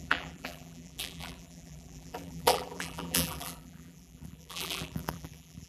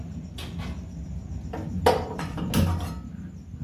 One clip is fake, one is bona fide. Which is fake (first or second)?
first